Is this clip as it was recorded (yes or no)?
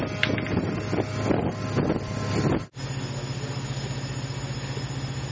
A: yes